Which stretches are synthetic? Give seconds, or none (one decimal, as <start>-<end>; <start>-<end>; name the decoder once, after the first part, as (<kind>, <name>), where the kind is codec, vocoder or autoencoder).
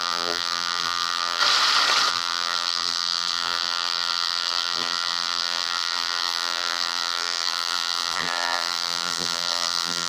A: 0.0-1.4 (vocoder, BigVGAN v2); 2.1-10.1